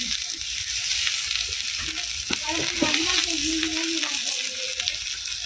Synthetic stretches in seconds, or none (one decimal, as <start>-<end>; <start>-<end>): none